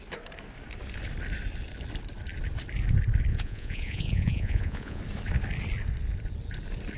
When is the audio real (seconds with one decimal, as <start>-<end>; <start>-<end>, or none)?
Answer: 0.0-3.3; 5.0-7.0